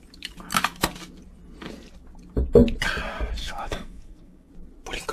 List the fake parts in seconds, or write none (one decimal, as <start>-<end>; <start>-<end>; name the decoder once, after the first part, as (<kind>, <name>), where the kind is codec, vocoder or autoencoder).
3.4-4.5 (codec, SNAC)